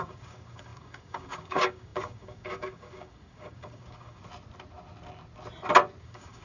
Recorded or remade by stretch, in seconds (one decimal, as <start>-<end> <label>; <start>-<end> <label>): 0.0-4.2 remade; 4.2-6.0 recorded; 6.0-6.4 remade